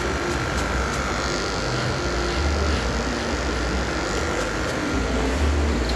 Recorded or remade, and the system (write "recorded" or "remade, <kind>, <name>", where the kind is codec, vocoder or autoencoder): recorded